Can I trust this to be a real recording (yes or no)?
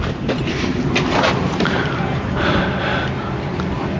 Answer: yes